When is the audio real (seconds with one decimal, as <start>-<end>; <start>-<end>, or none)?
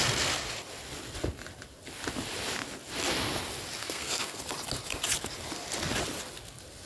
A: 0.0-3.8; 4.4-6.9